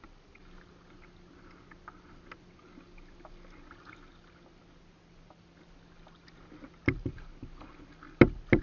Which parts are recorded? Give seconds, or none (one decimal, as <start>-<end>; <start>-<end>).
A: 0.0-8.6